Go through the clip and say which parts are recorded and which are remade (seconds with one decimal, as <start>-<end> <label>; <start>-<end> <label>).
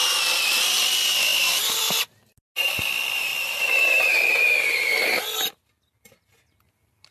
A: 0.0-7.1 recorded